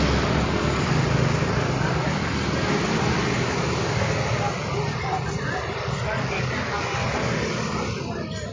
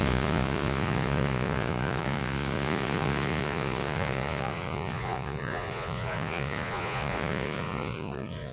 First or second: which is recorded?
first